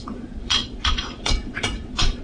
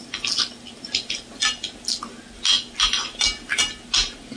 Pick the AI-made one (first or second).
first